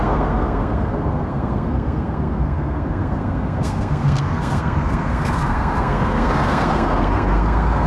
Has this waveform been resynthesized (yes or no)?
yes